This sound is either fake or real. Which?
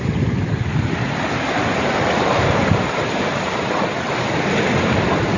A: real